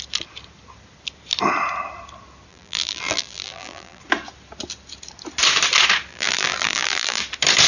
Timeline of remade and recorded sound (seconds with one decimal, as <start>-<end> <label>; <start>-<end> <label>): 0.0-2.5 recorded; 2.5-4.0 remade; 4.0-6.1 recorded; 6.1-7.2 remade; 7.2-7.7 recorded